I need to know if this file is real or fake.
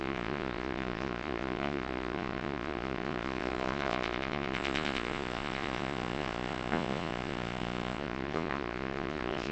fake